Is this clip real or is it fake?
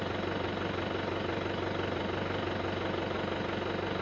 real